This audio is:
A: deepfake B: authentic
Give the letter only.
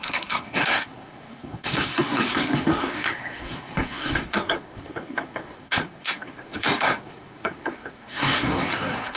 A